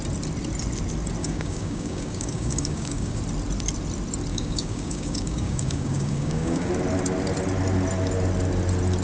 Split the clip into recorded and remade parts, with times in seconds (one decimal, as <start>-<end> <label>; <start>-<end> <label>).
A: 0.0-1.2 recorded; 1.2-3.2 remade; 3.2-4.3 recorded; 4.3-6.7 remade; 6.7-9.0 recorded